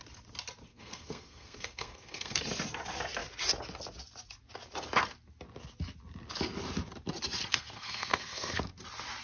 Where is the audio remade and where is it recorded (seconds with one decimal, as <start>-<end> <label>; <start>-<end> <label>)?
0.0-0.7 recorded; 0.7-2.4 remade; 2.4-7.5 recorded; 7.5-8.7 remade; 8.7-9.2 recorded